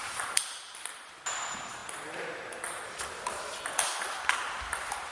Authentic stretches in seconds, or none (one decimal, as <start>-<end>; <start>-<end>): 0.0-5.1